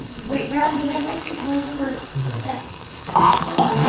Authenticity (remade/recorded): remade